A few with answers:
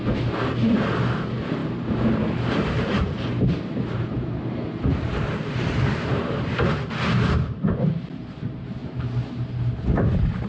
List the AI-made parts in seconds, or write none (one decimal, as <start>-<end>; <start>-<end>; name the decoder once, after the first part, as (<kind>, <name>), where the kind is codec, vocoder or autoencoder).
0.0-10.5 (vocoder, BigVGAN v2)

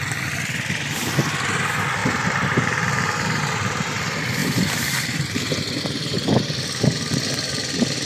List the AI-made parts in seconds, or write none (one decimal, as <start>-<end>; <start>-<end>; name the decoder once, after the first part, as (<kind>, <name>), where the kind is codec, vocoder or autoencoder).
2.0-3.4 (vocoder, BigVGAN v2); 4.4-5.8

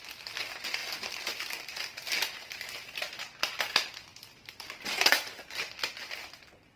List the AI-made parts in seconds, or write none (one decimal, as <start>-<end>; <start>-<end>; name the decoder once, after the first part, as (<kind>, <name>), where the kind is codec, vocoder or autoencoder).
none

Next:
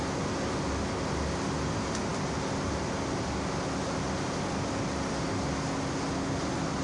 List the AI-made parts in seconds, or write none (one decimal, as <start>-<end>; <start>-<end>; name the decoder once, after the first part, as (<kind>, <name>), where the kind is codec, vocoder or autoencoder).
none

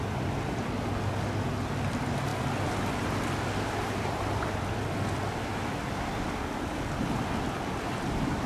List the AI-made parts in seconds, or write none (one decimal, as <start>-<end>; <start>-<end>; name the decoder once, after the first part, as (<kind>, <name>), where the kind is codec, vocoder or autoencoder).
none

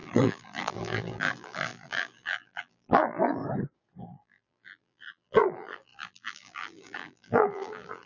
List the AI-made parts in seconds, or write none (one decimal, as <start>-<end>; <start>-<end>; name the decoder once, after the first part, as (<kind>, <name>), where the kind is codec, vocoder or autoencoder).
0.0-3.4 (vocoder, BigVGAN v2); 4.0-8.1

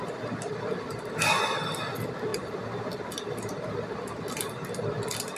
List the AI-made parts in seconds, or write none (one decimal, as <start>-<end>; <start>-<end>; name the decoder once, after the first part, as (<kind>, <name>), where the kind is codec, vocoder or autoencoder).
none